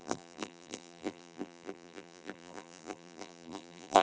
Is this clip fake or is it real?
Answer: fake